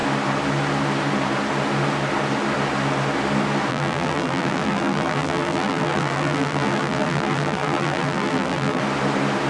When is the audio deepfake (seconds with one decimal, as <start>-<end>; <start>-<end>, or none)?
3.7-8.8